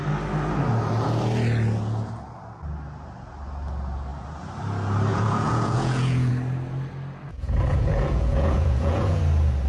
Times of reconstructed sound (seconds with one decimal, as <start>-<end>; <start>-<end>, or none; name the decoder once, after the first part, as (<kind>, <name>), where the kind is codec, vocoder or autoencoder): 5.1-6.3 (vocoder, Vocos); 7.3-9.2